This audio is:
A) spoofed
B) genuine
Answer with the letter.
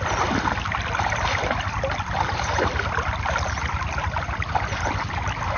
B